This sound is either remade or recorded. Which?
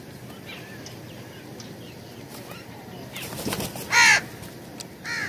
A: recorded